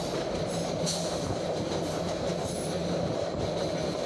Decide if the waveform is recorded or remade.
recorded